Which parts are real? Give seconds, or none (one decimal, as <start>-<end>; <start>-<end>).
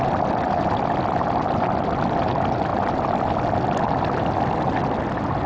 0.0-5.5